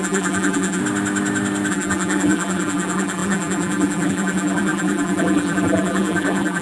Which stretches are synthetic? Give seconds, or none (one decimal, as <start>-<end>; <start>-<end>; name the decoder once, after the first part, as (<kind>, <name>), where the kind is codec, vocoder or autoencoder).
0.0-0.8 (vocoder, BigVGAN v2); 1.7-6.6